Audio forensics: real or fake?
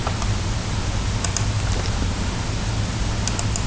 real